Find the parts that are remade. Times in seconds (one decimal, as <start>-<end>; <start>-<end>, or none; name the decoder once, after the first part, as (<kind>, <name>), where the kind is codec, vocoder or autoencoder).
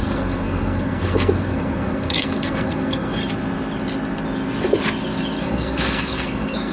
0.0-3.2 (codec, SNAC); 5.4-6.7